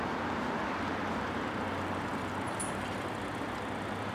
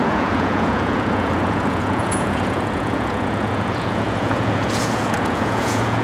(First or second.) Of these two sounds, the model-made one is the second